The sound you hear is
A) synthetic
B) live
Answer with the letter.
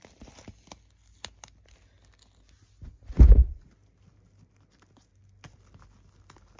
B